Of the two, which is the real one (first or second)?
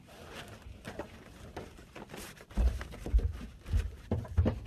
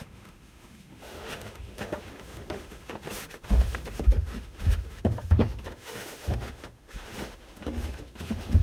first